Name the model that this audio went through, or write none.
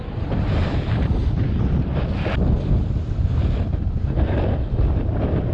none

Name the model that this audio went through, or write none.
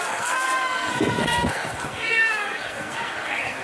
codec, SNAC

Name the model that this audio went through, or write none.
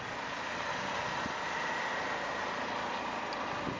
none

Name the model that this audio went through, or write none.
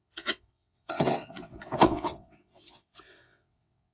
vocoder, WaveNeXt